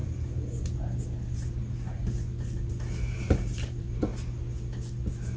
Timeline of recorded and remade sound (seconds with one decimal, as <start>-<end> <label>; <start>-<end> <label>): 0.0-3.2 recorded; 3.2-4.1 remade; 4.1-5.4 recorded